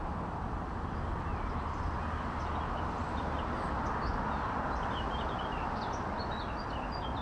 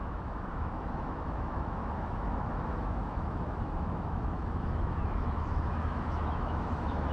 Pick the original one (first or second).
first